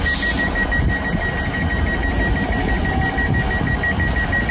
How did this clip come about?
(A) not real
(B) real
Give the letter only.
B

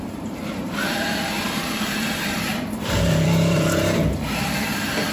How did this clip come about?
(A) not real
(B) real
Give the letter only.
A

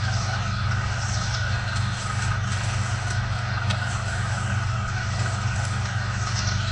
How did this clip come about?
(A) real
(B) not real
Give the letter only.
B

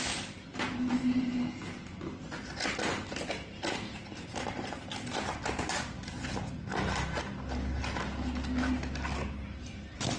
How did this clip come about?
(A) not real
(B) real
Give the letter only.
B